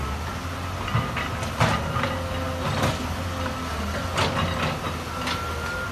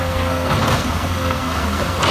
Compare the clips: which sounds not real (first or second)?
second